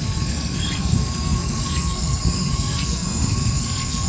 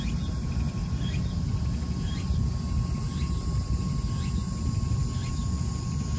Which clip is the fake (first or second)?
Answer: first